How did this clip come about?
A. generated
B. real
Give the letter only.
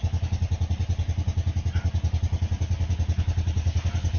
B